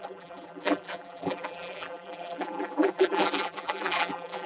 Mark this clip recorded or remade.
remade